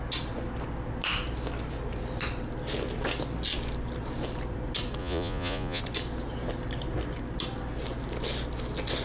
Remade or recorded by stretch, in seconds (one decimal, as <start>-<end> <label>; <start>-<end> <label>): 0.0-5.0 recorded; 5.0-5.8 remade; 5.8-9.0 recorded